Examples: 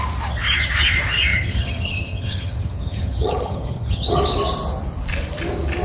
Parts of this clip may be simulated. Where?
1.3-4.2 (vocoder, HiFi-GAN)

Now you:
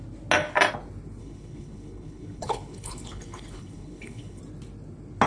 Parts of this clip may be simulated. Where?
1.2-4.4 (codec, HILCodec)

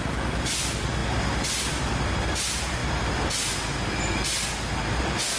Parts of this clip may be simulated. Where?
none

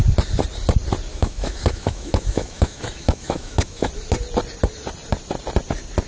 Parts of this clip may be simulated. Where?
1.1-3.9 (autoencoder, DAC-VAE)